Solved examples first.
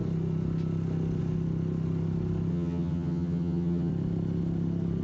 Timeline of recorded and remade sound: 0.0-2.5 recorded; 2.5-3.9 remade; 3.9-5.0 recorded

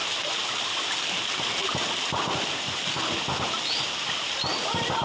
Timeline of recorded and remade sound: 0.0-5.0 recorded

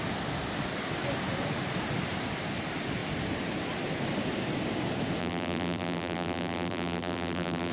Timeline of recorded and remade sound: 0.0-5.2 recorded; 5.2-7.7 remade

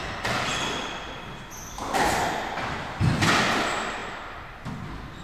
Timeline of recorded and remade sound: 0.0-5.2 recorded

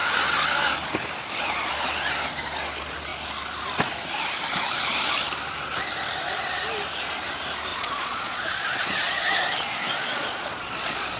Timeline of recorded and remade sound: 0.0-7.7 recorded; 7.7-11.2 remade

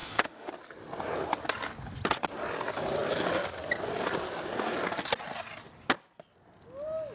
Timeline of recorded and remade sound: 0.0-0.5 remade; 0.5-7.1 recorded